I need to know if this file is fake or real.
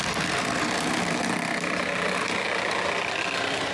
real